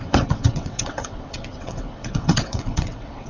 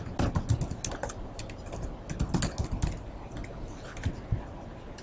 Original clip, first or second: second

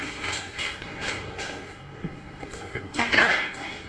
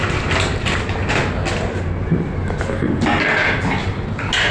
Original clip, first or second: second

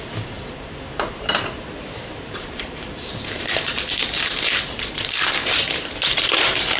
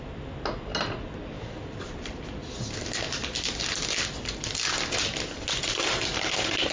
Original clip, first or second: second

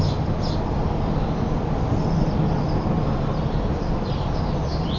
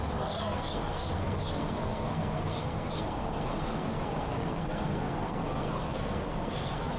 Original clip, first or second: first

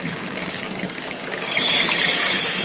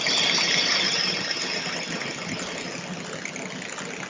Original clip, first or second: second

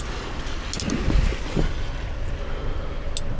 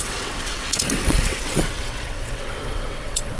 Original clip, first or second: first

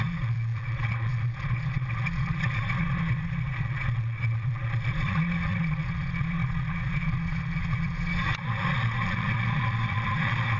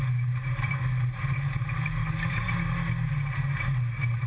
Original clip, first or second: second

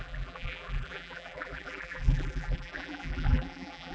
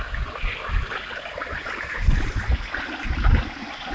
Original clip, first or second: second